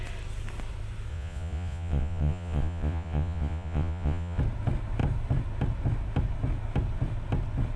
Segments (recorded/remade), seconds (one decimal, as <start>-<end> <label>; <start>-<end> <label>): 0.0-1.1 recorded; 1.1-4.4 remade; 4.4-7.8 recorded